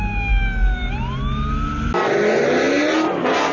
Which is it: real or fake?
real